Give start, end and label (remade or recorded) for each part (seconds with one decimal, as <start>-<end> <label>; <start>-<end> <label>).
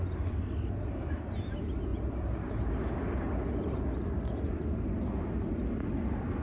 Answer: 0.0-6.4 recorded